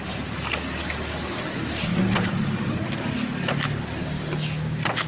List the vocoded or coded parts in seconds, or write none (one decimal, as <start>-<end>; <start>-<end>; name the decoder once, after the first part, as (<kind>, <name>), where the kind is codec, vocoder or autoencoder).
none